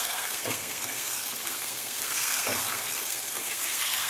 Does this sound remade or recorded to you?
remade